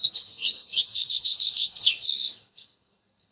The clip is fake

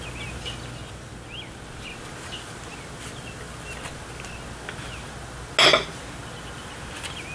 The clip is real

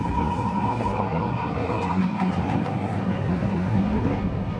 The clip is fake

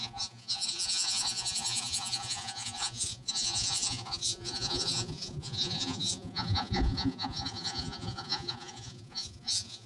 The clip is fake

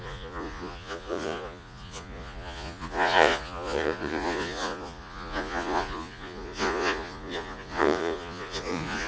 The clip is fake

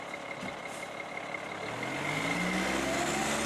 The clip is real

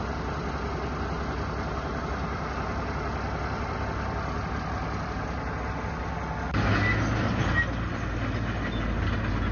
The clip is real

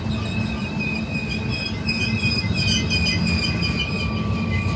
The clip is real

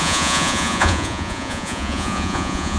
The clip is fake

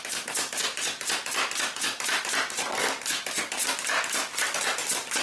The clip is real